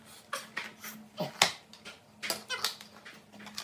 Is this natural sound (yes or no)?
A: yes